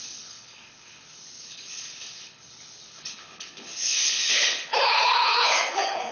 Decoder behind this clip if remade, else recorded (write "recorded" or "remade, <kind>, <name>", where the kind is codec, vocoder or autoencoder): remade, codec, HILCodec